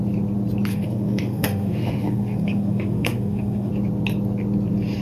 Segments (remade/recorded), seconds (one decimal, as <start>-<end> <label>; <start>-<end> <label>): 0.0-0.7 recorded; 0.7-3.7 remade; 3.7-5.0 recorded